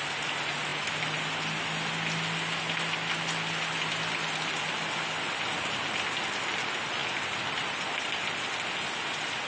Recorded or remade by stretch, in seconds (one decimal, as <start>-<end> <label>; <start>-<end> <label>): 0.0-9.5 recorded